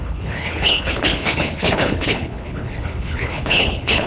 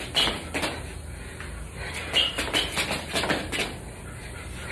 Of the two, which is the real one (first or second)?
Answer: second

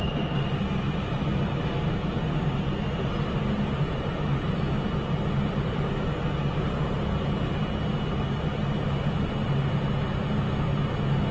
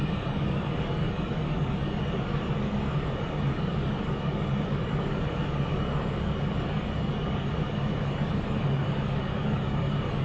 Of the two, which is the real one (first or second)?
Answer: first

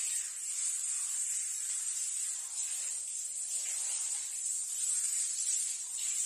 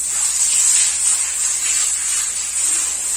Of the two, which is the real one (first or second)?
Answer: second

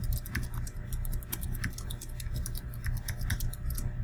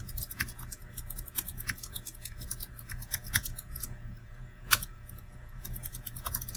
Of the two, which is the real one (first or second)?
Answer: first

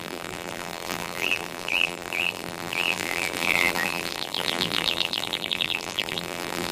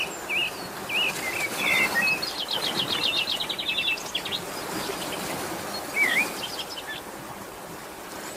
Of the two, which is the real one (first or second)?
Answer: second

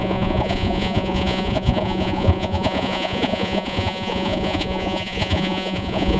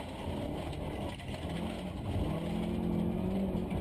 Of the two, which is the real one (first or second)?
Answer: second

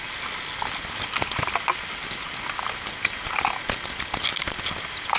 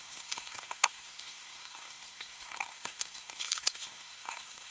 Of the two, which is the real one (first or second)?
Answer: first